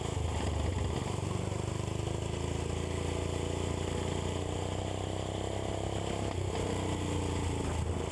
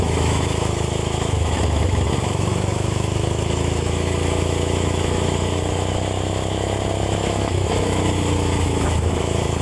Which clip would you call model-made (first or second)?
second